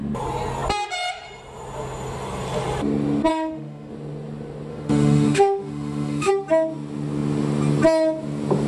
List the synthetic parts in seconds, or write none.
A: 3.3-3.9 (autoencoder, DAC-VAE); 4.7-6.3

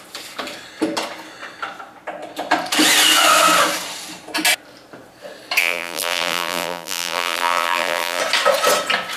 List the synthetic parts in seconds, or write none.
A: 5.6-8.2 (vocoder, BigVGAN v2)

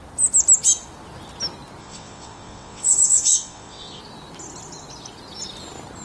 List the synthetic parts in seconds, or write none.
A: 1.8-4.0 (vocoder, WaveNeXt)

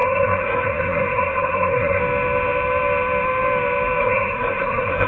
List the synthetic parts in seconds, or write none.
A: 0.0-2.0 (codec, SNAC); 4.0-5.1

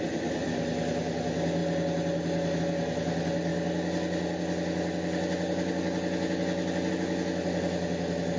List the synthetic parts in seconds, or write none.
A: none

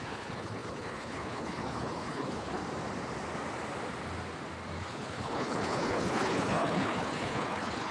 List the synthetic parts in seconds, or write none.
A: 0.0-2.6 (codec, HILCodec); 4.8-7.9